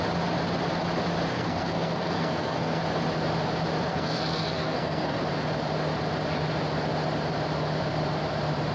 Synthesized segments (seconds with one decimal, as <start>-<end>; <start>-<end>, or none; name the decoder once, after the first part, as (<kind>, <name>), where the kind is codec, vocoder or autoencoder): 1.3-2.8 (codec, SNAC); 3.9-5.2